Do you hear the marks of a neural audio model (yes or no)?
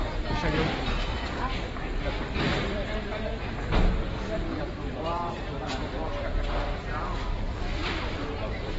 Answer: yes